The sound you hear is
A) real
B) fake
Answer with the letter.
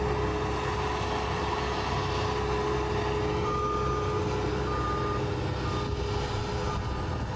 A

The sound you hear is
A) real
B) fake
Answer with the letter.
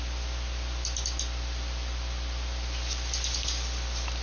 A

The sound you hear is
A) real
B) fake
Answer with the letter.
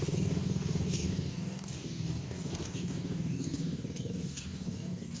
B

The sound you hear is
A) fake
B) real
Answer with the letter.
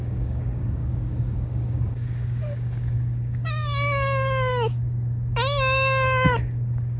A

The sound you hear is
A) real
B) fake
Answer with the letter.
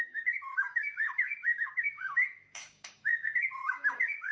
B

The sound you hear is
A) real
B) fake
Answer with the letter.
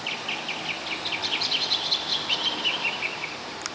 A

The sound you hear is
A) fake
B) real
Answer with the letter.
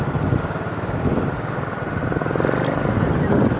B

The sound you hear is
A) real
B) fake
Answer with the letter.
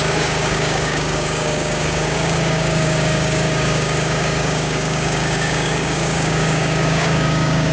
B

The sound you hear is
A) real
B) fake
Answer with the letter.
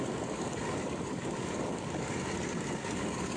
B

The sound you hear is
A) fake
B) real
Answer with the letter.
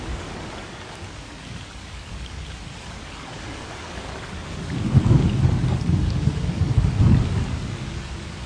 A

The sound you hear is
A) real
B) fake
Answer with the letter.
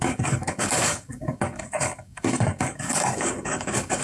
B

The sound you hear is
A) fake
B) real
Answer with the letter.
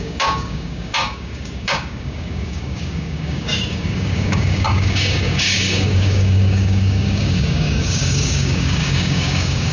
A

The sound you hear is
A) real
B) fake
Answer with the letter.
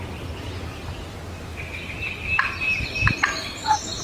A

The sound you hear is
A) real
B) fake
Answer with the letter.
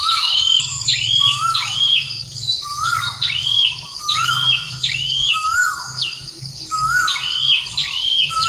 B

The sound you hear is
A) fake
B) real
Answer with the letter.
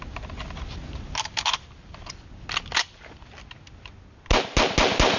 B